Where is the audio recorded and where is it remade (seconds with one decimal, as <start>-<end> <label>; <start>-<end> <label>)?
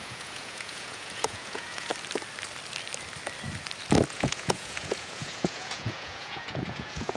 0.0-1.9 remade; 1.9-4.1 recorded; 4.1-7.2 remade